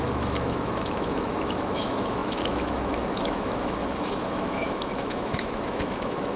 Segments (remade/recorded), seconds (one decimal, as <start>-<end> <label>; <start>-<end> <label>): 0.0-6.4 remade